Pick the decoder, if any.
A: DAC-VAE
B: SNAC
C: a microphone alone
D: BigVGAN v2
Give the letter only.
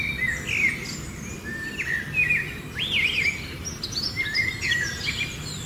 C